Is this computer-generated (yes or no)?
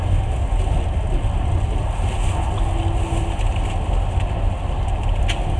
no